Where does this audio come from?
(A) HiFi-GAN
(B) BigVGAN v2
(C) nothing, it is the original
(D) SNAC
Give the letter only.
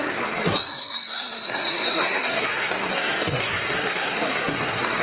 D